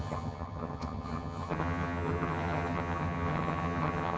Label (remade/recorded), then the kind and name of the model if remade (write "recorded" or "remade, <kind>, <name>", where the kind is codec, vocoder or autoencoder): remade, vocoder, HiFi-GAN